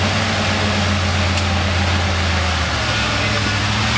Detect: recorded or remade recorded